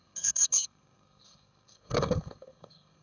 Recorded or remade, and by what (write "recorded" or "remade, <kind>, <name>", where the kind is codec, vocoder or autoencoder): remade, codec, SNAC